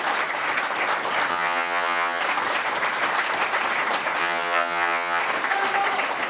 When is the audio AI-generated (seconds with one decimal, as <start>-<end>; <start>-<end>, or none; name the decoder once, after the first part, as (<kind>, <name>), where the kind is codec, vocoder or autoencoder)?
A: 1.3-2.2 (vocoder, HiFi-GAN); 4.2-5.2